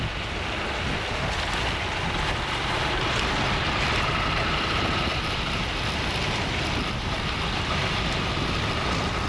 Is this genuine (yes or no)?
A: yes